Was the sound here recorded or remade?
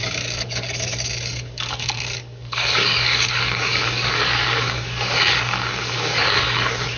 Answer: remade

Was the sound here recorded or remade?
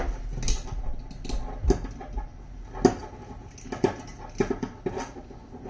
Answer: recorded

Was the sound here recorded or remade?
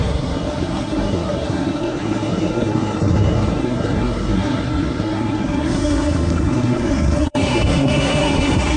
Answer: remade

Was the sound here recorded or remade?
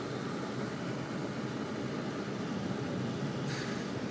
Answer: recorded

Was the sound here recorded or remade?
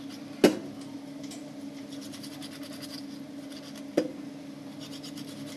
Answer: recorded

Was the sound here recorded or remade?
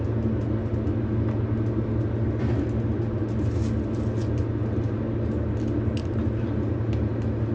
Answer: recorded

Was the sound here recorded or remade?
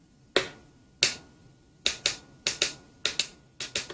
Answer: recorded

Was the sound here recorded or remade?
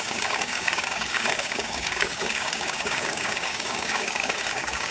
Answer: remade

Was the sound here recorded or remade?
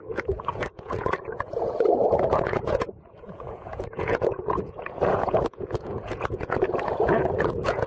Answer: remade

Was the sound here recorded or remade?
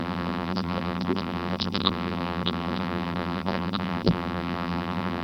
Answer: remade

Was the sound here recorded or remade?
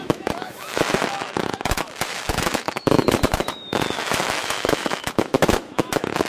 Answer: remade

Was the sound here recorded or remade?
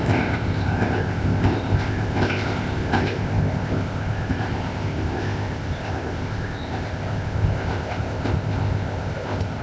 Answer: remade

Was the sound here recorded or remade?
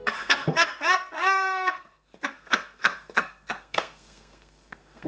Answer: remade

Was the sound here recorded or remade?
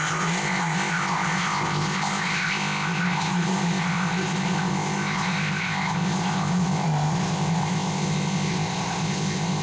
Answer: remade